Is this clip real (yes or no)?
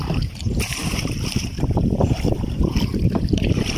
no